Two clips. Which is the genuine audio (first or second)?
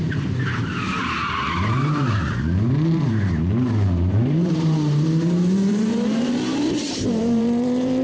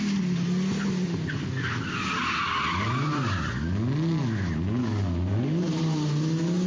second